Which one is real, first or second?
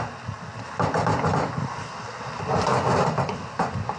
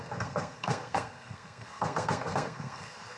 first